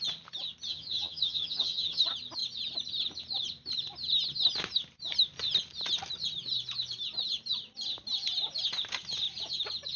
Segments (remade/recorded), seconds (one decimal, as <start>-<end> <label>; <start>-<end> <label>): 0.0-0.7 recorded; 0.7-2.0 remade; 2.0-10.0 recorded